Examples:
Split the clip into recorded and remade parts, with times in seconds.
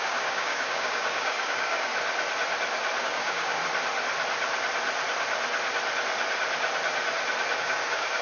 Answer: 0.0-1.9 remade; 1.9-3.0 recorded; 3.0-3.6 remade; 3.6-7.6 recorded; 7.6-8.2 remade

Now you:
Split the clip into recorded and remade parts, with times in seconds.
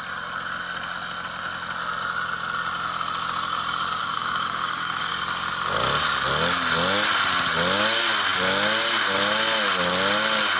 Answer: 0.0-4.0 recorded; 4.0-5.1 remade; 5.1-10.6 recorded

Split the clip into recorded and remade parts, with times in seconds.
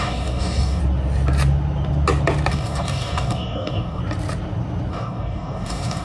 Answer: 0.0-0.8 remade; 0.8-2.5 recorded; 2.5-4.0 remade; 4.0-4.9 recorded; 4.9-6.0 remade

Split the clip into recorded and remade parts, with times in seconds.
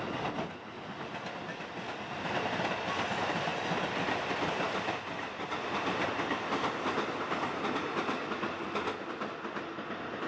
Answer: 0.0-10.3 recorded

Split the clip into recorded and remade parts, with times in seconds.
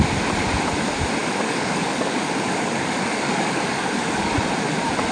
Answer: 0.0-1.2 recorded; 1.2-4.3 remade; 4.3-5.1 recorded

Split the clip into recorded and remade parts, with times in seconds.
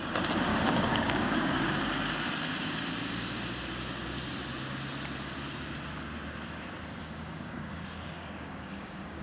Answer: 0.0-0.5 recorded; 0.5-1.8 remade; 1.8-7.0 recorded; 7.0-9.2 remade